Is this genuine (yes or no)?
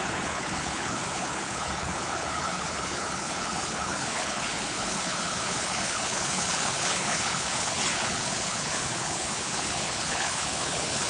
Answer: no